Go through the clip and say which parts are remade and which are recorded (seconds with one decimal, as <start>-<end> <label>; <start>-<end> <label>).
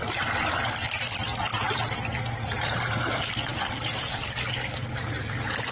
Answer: 0.0-1.5 recorded; 1.5-3.1 remade; 3.1-3.5 recorded; 3.5-4.3 remade; 4.3-5.7 recorded